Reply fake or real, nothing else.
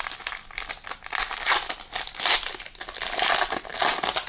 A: real